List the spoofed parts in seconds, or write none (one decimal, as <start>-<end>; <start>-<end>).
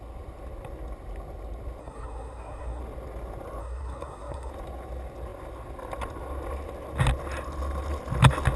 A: 1.8-2.8; 3.6-4.5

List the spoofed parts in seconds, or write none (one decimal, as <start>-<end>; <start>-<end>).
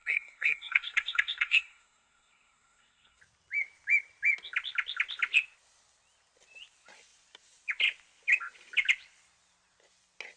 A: 0.0-3.2